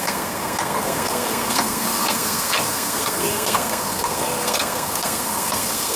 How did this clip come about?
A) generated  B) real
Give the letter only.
A